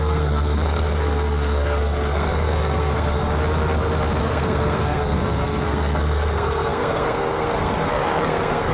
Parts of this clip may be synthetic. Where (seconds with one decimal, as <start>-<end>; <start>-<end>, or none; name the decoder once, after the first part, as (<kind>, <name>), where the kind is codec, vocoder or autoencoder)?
0.0-3.2 (codec, SNAC); 4.2-8.7